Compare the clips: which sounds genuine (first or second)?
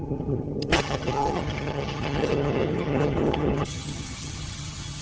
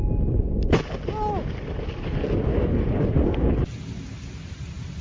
second